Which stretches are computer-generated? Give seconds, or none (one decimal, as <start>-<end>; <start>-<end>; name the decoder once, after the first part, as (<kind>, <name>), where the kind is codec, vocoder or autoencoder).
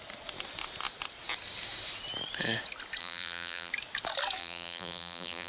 3.0-3.7 (vocoder, BigVGAN v2); 4.4-5.5